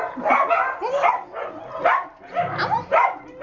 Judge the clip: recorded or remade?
recorded